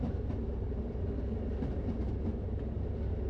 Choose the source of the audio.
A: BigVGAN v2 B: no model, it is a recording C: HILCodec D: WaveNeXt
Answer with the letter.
A